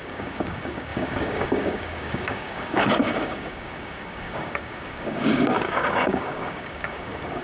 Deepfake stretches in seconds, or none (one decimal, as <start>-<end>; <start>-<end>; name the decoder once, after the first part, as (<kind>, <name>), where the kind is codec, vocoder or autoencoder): 0.0-7.4 (codec, DAC)